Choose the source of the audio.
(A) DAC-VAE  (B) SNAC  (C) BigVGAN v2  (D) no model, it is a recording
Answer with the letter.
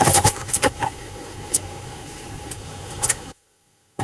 B